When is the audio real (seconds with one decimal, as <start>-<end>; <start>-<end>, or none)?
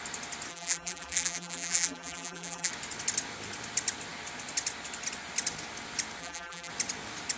0.0-0.5; 2.7-6.2; 6.7-7.4